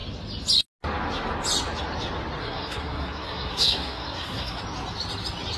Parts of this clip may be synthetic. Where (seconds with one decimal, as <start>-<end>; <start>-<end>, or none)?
2.4-4.6